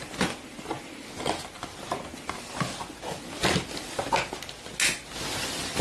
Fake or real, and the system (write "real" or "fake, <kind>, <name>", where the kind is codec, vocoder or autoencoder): real